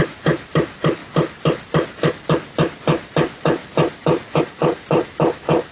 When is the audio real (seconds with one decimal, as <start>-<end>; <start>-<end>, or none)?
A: 0.0-5.7